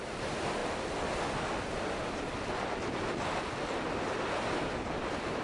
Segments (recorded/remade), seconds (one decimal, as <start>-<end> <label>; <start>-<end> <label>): 0.0-5.4 recorded